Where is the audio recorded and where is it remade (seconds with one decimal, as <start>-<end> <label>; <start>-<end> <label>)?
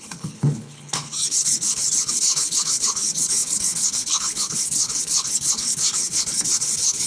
0.0-7.1 remade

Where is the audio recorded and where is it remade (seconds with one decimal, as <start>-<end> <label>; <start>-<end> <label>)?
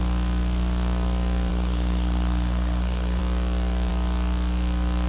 0.0-1.5 recorded; 1.5-3.2 remade; 3.2-5.1 recorded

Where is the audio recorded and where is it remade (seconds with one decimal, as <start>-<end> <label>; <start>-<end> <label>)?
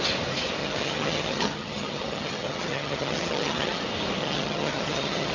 0.0-0.6 recorded; 0.6-3.8 remade; 3.8-4.2 recorded; 4.2-5.3 remade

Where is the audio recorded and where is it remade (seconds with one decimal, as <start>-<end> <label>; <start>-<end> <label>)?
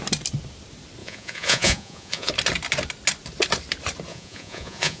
0.0-1.0 recorded; 1.0-2.3 remade; 2.3-4.1 recorded; 4.1-5.0 remade